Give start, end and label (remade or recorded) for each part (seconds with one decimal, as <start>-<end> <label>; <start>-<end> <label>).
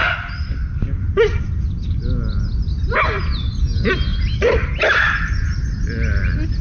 0.0-4.1 recorded; 4.1-5.4 remade; 5.4-6.6 recorded